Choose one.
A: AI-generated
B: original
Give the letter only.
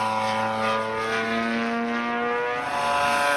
B